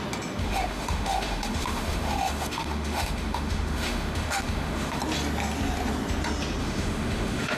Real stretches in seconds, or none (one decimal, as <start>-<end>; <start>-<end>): 0.0-0.4; 5.0-6.6